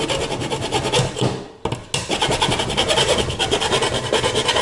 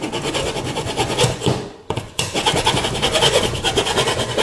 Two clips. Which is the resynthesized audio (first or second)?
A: second